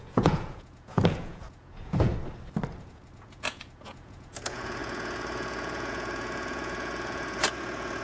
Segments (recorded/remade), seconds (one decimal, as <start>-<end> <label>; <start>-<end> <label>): 0.0-2.1 remade; 2.1-2.8 recorded; 2.8-8.0 remade